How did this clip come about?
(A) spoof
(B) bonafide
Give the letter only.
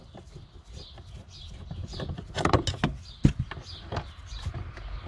B